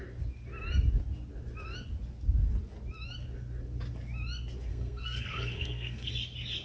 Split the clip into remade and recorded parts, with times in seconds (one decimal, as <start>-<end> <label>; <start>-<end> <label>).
0.0-4.7 recorded; 4.7-6.1 remade; 6.1-6.6 recorded